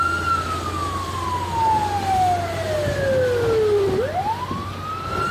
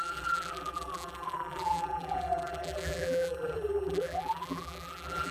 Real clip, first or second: first